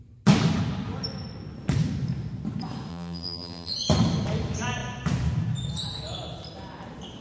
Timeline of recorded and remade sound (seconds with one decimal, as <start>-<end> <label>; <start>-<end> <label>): 0.0-2.9 recorded; 2.9-3.7 remade; 3.7-7.2 recorded